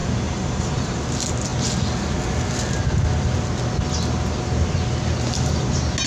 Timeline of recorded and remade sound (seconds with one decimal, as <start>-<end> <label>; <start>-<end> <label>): 0.0-1.0 remade; 1.0-6.1 recorded